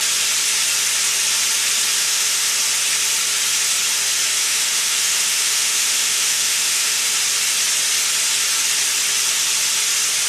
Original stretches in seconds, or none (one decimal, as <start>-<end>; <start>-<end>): 0.0-2.0; 2.5-4.4; 7.1-10.3